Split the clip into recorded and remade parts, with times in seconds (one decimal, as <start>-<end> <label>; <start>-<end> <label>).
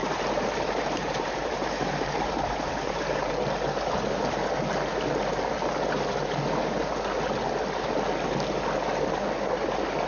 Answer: 0.0-3.3 remade; 3.3-10.1 recorded